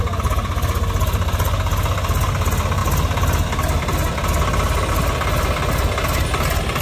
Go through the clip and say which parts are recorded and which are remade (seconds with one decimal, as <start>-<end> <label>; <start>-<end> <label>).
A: 0.0-6.8 recorded